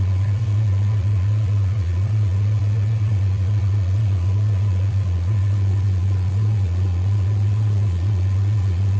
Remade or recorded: remade